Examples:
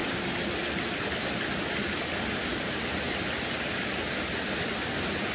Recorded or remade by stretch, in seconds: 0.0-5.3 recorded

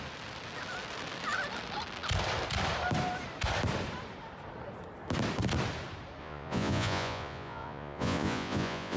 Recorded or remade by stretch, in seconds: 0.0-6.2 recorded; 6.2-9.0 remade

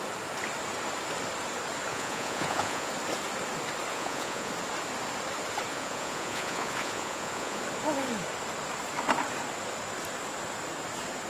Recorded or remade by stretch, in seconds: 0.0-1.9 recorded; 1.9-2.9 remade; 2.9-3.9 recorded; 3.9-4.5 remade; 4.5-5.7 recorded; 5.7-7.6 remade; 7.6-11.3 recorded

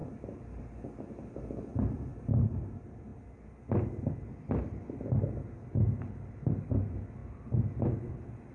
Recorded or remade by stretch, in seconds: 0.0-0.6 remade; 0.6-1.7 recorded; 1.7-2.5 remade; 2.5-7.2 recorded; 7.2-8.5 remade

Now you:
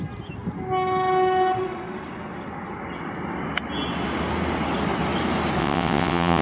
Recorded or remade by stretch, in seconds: 0.0-5.6 recorded; 5.6-6.4 remade

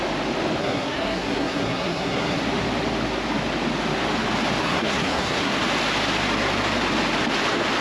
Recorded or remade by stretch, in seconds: 0.0-0.6 recorded; 0.6-2.4 remade; 2.4-4.6 recorded; 4.6-5.5 remade; 5.5-7.8 recorded

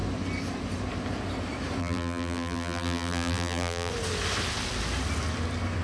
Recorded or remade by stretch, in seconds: 0.0-1.8 recorded; 1.8-3.9 remade; 3.9-5.8 recorded

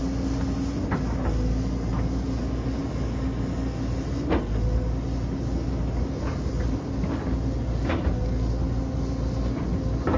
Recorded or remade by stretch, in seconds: 0.0-10.2 recorded